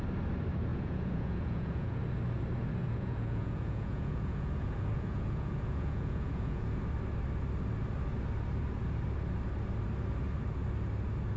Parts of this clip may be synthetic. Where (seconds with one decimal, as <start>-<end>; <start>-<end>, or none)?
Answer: 0.7-2.0; 2.8-6.8